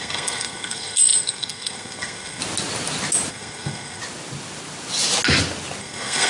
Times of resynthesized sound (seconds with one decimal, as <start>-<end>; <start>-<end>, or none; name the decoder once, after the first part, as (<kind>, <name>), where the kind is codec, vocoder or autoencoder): 0.0-2.4 (codec, SNAC); 3.3-4.0; 5.8-6.3